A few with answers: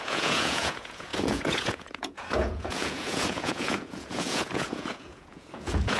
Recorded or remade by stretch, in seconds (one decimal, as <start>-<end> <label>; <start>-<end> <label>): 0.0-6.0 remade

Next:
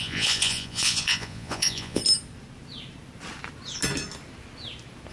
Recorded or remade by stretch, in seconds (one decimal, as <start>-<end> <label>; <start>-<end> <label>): 0.0-2.0 remade; 2.0-5.1 recorded

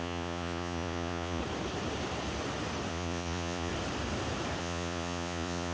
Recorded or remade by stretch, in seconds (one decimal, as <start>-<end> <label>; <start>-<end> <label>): 0.0-1.4 remade; 1.4-2.9 recorded; 2.9-3.7 remade; 3.7-4.6 recorded; 4.6-5.7 remade

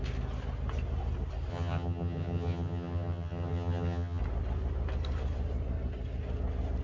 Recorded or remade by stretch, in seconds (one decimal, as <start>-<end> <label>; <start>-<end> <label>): 0.0-1.5 recorded; 1.5-4.2 remade; 4.2-6.8 recorded

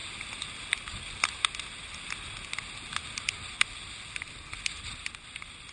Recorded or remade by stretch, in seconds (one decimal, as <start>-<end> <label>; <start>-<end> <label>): 0.0-5.7 recorded

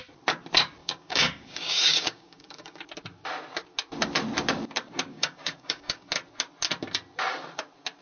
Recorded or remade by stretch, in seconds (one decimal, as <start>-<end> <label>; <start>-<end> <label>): 0.0-0.8 recorded; 0.8-2.8 remade; 2.8-5.1 recorded; 5.1-6.1 remade; 6.1-8.0 recorded

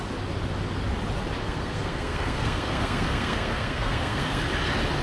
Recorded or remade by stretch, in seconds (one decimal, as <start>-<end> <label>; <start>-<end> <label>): 0.0-1.4 recorded; 1.4-4.4 remade; 4.4-5.0 recorded

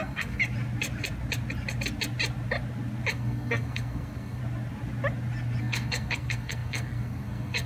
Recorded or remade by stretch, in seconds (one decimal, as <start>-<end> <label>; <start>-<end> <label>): 0.0-0.4 remade; 0.4-3.1 recorded; 3.1-4.4 remade; 4.4-5.6 recorded; 5.6-7.7 remade